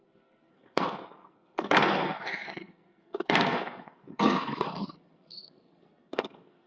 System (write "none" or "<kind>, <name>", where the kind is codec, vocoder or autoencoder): codec, SNAC